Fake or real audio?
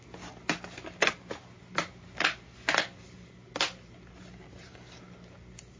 real